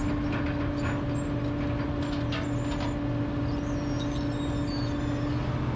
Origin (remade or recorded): recorded